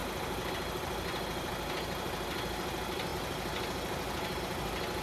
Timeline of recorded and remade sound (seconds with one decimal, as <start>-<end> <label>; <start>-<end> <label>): 0.0-5.0 recorded